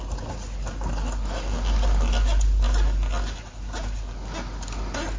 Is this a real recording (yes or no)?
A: yes